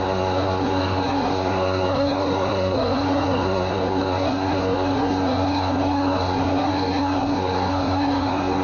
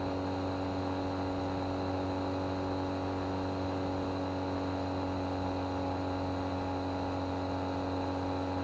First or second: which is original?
second